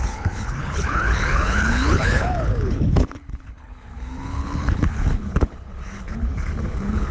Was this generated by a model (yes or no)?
yes